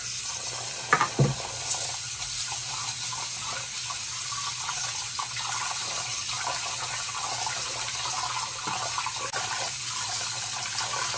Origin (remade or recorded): recorded